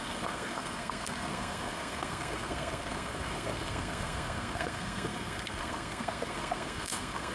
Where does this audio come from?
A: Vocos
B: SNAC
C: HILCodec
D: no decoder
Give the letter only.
B